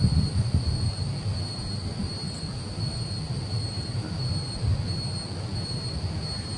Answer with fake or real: real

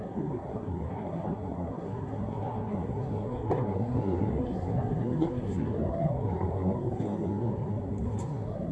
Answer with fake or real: fake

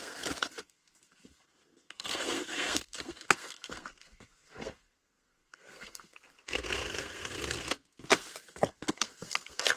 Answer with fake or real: fake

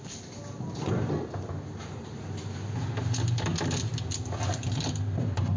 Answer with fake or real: real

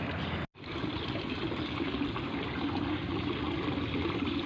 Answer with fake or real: real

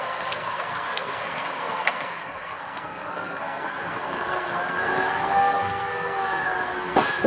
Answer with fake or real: fake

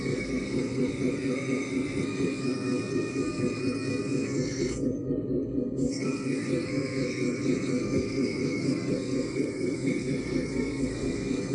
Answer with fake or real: fake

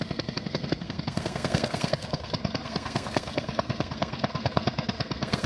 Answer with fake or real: fake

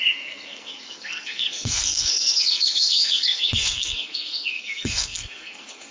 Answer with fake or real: fake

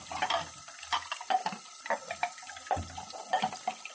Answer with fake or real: real